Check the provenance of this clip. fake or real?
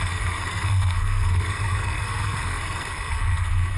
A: fake